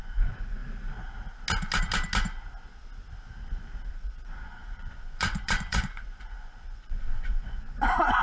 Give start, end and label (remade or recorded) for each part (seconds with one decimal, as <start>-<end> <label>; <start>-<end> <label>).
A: 0.0-0.6 remade; 0.6-3.9 recorded; 3.9-8.2 remade